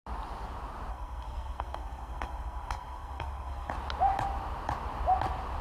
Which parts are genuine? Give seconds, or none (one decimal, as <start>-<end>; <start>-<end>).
0.0-0.9; 3.7-5.6